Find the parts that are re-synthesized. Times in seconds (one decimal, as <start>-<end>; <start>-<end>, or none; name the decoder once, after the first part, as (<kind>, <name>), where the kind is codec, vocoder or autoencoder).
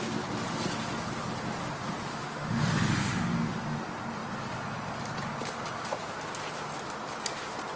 2.1-3.5 (autoencoder, DAC-VAE)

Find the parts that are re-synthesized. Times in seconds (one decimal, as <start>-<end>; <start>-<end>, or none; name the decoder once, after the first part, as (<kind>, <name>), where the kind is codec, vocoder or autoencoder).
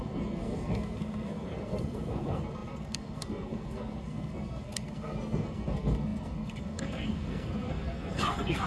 0.0-8.7 (codec, SNAC)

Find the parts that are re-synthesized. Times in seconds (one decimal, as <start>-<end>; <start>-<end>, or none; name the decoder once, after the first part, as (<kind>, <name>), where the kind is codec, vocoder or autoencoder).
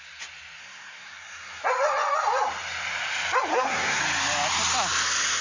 0.6-1.6 (codec, SNAC); 3.5-4.0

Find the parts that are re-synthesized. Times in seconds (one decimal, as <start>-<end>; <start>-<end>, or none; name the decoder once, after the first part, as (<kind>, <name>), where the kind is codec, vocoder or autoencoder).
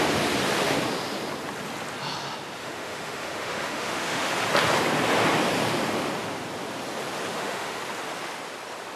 2.6-4.3 (autoencoder, DAC-VAE); 7.3-7.8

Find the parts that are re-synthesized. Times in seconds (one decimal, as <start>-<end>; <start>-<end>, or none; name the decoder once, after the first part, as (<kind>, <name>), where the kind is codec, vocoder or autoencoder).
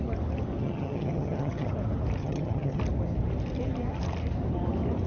0.6-1.7 (vocoder, HiFi-GAN); 2.2-2.8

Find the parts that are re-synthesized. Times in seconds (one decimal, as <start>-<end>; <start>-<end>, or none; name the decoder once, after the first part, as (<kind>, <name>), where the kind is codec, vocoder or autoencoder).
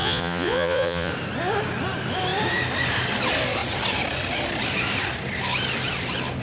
0.0-1.1 (vocoder, Vocos)